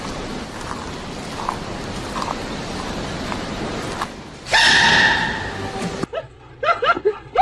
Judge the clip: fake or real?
real